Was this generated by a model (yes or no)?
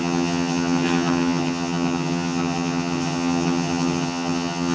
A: yes